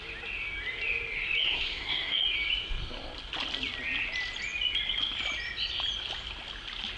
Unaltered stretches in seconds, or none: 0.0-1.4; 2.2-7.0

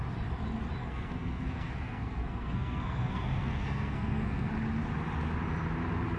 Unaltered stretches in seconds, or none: 0.0-0.8; 4.5-6.2

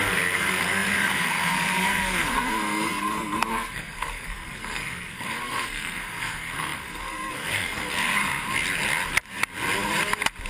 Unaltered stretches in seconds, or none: 8.2-10.5

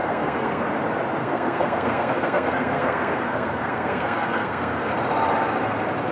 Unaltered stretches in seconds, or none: 0.6-1.2; 4.9-6.1

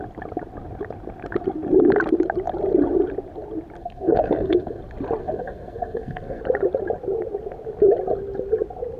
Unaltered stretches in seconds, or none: 0.0-3.8; 4.8-5.2; 6.4-9.0

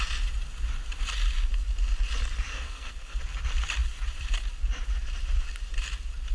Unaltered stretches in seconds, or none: 0.0-2.5; 3.2-6.3

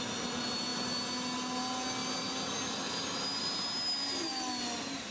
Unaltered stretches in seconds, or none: 0.0-5.1

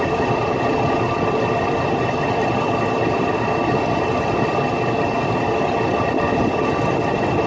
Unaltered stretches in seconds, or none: 0.0-7.5